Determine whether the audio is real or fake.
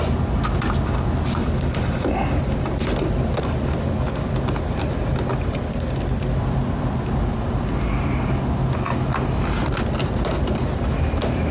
real